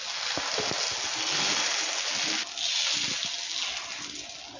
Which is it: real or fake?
real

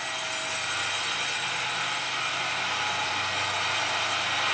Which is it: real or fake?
real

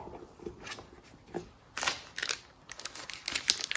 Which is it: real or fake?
real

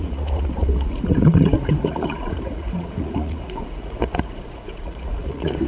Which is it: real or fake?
fake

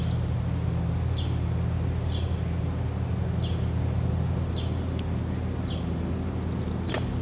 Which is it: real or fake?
real